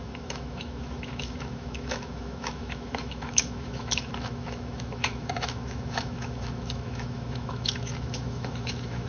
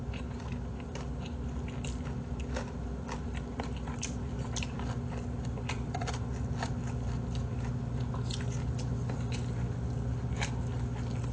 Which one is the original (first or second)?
second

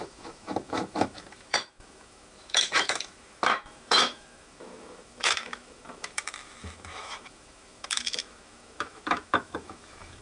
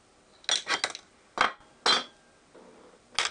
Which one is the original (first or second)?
second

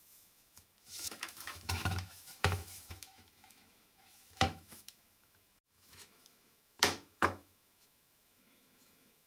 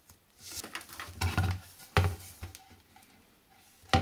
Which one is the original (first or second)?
second